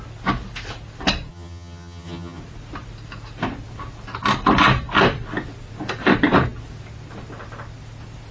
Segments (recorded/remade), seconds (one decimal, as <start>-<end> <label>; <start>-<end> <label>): 0.0-1.3 recorded; 1.3-2.4 remade; 2.4-8.3 recorded